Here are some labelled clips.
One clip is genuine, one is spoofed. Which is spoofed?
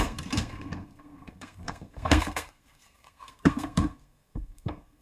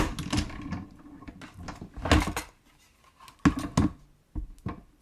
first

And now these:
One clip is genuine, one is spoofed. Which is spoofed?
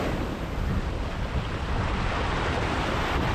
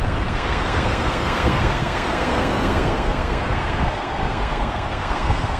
second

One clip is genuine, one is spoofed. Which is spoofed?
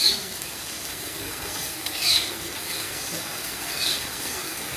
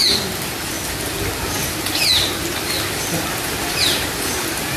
first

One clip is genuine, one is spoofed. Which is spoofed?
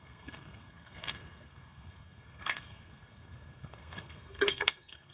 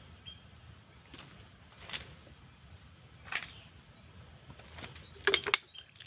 first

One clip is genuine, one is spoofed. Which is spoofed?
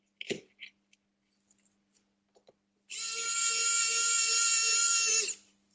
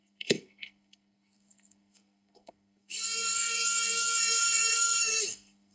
second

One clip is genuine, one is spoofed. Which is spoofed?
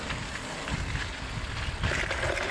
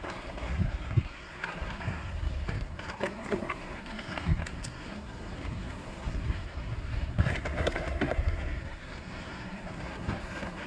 second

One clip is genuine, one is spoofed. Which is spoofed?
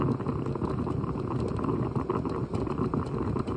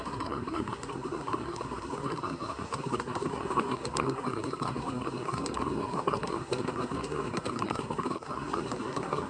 second